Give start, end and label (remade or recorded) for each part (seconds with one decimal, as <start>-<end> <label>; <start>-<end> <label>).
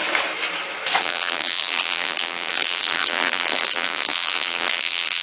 0.0-1.0 recorded; 1.0-5.2 remade